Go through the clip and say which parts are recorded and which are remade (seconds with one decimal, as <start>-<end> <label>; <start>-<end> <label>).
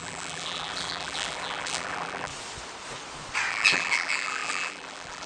0.0-2.3 remade; 2.3-3.5 recorded; 3.5-5.3 remade